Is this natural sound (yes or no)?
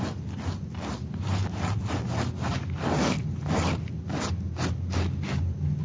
yes